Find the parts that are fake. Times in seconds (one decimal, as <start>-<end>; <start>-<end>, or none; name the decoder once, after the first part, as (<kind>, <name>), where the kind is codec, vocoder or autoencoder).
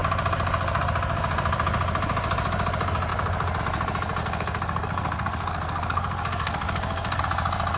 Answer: 4.2-7.2 (codec, SNAC)